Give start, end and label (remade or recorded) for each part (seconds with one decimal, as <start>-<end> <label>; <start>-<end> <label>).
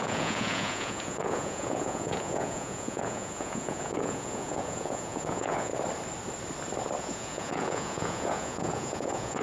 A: 0.0-5.7 remade; 5.7-7.0 recorded; 7.0-9.4 remade